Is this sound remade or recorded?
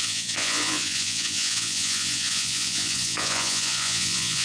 remade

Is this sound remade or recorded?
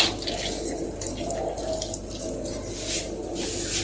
recorded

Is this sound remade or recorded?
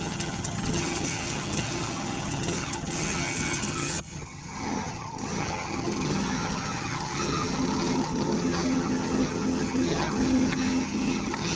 remade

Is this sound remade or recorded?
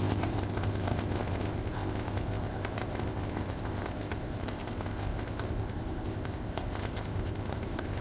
remade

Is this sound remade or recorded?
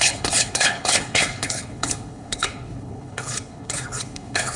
remade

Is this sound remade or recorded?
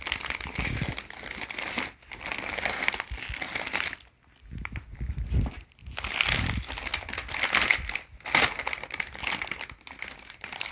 recorded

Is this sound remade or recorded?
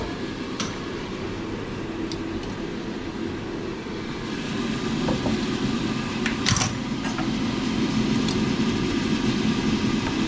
recorded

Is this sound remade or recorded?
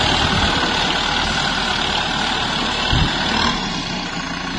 recorded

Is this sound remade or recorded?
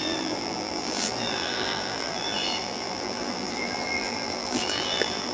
remade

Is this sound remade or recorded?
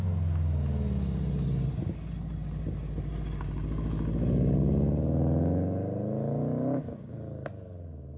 recorded